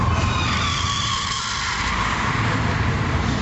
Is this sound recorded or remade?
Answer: remade